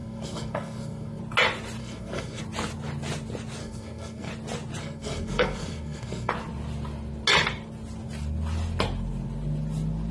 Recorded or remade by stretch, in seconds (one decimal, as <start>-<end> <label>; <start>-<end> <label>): 0.0-1.2 remade; 1.2-1.8 recorded; 1.8-2.4 remade; 2.4-3.6 recorded; 3.6-4.3 remade; 4.3-4.8 recorded; 4.8-6.3 remade; 6.3-10.1 recorded